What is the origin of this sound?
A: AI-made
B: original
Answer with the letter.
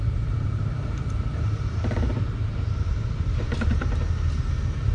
A